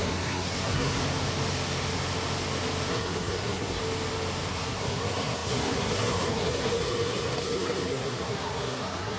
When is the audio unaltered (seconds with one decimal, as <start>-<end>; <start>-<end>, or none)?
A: 1.0-2.9; 3.8-4.5